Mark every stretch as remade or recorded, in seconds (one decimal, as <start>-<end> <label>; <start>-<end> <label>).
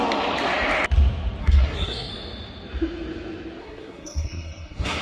0.0-1.4 recorded; 1.4-2.1 remade; 2.1-3.6 recorded; 3.6-5.0 remade